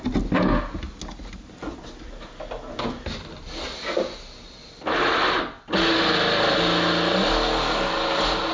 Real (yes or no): yes